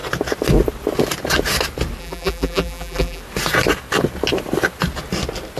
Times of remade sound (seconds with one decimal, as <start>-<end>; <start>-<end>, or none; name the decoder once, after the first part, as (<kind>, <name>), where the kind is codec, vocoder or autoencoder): 2.0-3.2 (vocoder, BigVGAN v2)